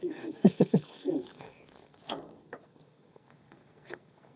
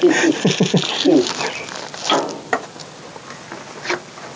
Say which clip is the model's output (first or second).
first